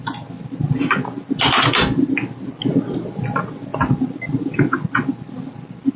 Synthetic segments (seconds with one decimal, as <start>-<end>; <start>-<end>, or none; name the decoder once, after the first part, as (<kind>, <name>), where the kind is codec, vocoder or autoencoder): none